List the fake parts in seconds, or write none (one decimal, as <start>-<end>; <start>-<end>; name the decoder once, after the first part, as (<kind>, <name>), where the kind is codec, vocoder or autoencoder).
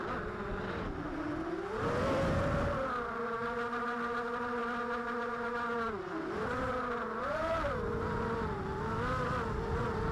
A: none